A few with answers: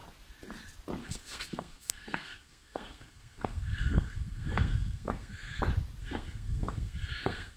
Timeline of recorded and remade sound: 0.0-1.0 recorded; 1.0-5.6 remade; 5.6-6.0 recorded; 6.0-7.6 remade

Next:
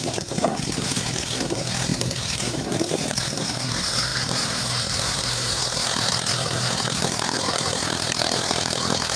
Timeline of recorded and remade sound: 0.0-9.2 remade

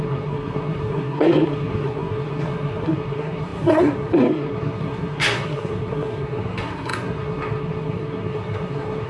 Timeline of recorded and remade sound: 0.0-9.1 remade

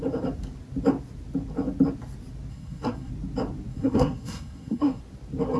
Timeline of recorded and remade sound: 0.0-2.5 recorded; 2.5-3.1 remade; 3.1-3.7 recorded; 3.7-5.0 remade; 5.0-5.6 recorded

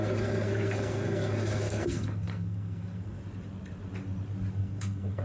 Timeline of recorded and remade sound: 0.0-3.2 remade; 3.2-4.5 recorded; 4.5-5.2 remade